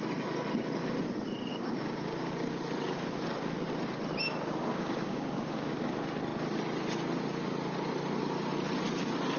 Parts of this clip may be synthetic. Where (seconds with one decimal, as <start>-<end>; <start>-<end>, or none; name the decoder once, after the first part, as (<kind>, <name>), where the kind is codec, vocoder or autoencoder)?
1.5-2.3 (codec, DAC); 4.6-5.7